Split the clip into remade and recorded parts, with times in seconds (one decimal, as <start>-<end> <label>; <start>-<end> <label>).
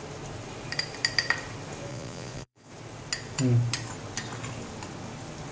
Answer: 0.0-1.9 recorded; 1.9-2.7 remade; 2.7-5.5 recorded